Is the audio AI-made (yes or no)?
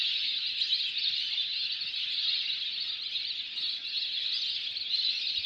no